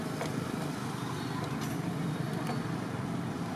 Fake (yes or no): no